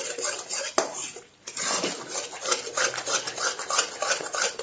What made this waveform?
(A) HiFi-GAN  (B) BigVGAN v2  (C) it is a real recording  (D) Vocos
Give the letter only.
C